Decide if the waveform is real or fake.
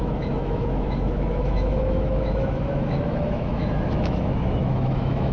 fake